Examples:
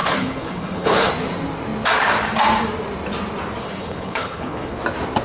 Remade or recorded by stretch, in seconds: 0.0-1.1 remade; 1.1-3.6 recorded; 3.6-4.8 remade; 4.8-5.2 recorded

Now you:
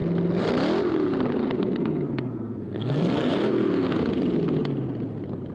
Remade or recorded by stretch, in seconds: 0.0-1.4 recorded; 1.4-4.1 remade; 4.1-5.5 recorded

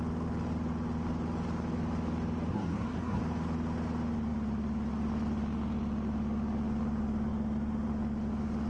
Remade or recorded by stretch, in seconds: 0.0-2.5 recorded; 2.5-3.2 remade; 3.2-8.7 recorded

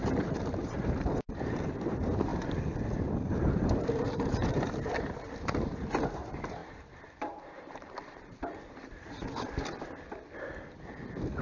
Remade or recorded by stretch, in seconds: 0.0-2.3 remade; 2.3-2.9 recorded; 2.9-9.2 remade; 9.2-11.4 recorded